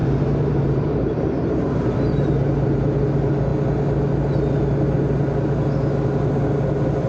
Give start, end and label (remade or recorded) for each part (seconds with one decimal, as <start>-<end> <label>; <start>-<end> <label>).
0.0-3.0 remade; 3.0-7.1 recorded

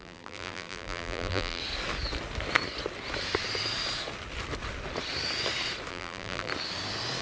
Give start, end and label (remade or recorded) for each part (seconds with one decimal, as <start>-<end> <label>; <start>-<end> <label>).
0.0-1.6 remade; 1.6-5.9 recorded; 5.9-6.5 remade; 6.5-7.2 recorded

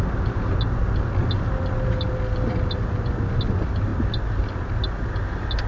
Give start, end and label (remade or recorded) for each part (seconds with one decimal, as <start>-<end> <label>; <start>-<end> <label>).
0.0-5.7 recorded